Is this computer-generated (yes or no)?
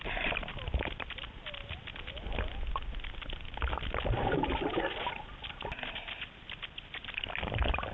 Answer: no